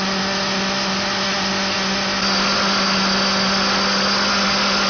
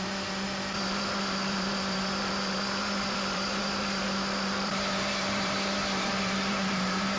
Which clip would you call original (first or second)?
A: first